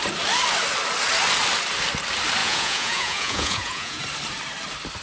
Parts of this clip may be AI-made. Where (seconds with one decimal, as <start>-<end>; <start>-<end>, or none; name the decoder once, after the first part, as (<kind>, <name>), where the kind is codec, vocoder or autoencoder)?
2.4-4.0 (vocoder, Vocos)